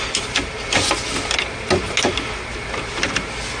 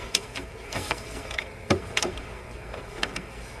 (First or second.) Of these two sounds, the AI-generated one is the second